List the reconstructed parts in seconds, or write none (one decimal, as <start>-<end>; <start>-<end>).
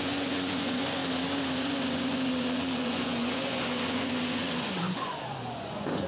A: 0.0-1.0; 1.6-6.1